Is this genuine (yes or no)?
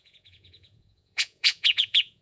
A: no